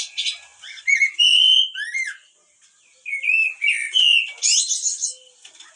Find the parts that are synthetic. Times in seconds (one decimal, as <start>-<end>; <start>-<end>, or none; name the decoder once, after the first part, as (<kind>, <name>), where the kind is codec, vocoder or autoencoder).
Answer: none